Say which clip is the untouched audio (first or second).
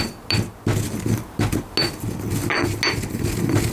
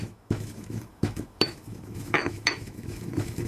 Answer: first